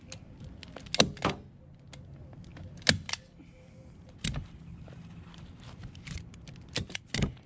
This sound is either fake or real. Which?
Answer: real